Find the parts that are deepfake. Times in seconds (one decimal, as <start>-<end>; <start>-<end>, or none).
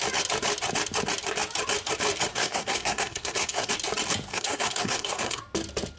2.3-3.7; 4.3-5.4